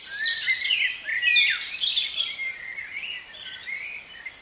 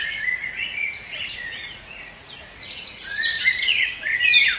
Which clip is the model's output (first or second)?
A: second